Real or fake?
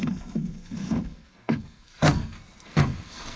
fake